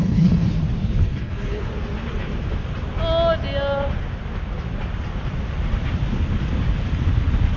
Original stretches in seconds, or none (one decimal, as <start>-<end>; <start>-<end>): 0.5-1.0; 1.7-7.6

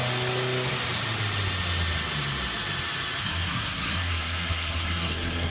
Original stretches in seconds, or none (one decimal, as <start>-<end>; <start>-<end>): 0.0-3.2

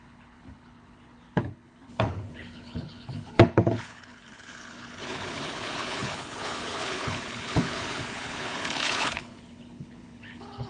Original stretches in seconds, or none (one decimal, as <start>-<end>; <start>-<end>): none

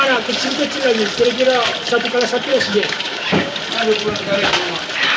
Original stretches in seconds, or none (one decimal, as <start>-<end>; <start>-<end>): 0.0-2.5; 3.6-5.2

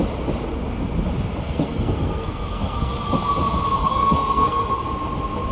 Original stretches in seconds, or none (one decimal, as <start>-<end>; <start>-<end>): 0.0-1.4; 2.9-3.8; 4.8-5.5

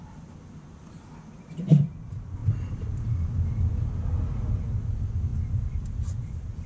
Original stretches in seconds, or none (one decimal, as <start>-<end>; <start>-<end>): 0.0-6.7

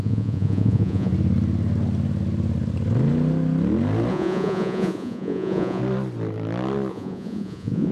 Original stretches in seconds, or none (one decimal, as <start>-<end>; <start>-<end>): 1.1-4.1; 5.8-6.9